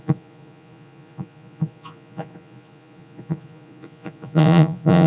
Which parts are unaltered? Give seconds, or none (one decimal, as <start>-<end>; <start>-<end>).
none